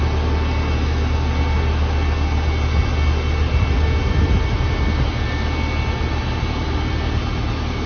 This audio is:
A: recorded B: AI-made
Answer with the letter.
A